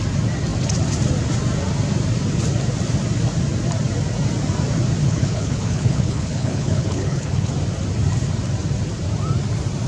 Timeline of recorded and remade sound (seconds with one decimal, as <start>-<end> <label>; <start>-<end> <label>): 0.0-5.0 recorded; 5.0-7.5 remade; 7.5-9.9 recorded